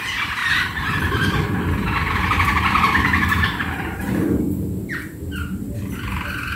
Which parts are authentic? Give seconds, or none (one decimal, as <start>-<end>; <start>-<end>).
0.0-0.4; 4.4-6.6